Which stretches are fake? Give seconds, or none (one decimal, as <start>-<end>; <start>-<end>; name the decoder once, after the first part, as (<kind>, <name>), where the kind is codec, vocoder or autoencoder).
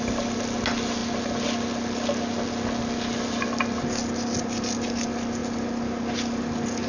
none